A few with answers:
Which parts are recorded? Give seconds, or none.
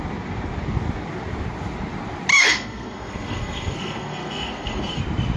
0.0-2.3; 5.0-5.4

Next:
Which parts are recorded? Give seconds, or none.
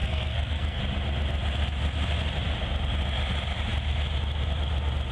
0.8-5.1